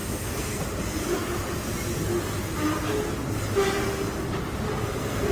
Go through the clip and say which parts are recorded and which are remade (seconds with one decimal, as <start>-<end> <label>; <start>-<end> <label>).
0.0-0.6 remade; 0.6-4.7 recorded; 4.7-5.3 remade